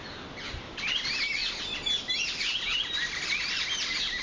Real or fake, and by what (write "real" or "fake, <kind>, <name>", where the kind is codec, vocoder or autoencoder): real